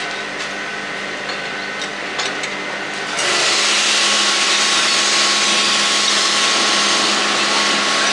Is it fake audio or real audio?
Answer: real